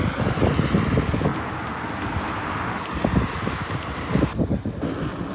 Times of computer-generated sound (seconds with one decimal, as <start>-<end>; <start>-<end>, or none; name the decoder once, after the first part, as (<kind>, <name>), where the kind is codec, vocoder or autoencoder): none